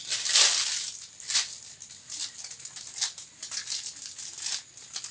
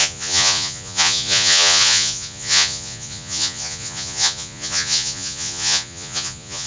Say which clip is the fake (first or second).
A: second